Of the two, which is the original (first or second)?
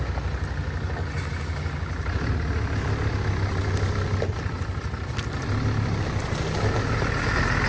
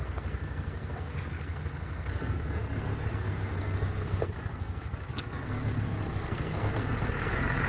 first